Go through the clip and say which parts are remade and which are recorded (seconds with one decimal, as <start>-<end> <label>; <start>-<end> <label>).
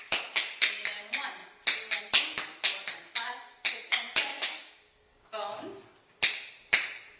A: 0.0-4.3 recorded; 4.3-5.8 remade; 5.8-7.2 recorded